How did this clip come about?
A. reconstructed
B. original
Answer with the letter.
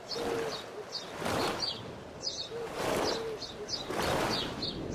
B